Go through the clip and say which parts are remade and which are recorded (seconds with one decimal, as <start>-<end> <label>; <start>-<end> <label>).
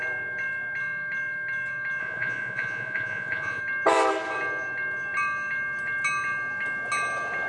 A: 0.0-2.0 recorded; 2.0-3.6 remade; 3.6-7.5 recorded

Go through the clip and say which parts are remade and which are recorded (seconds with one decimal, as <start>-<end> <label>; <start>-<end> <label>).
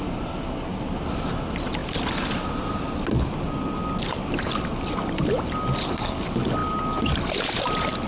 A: 0.0-8.1 recorded